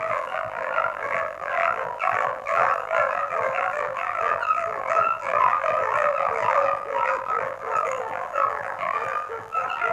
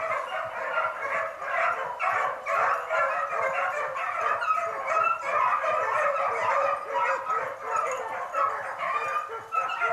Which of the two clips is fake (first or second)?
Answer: first